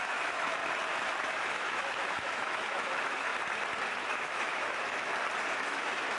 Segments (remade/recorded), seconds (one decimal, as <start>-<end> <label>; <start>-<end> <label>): 0.0-0.6 remade; 0.6-1.2 recorded; 1.2-3.3 remade; 3.3-3.9 recorded; 3.9-5.1 remade; 5.1-5.6 recorded; 5.6-6.2 remade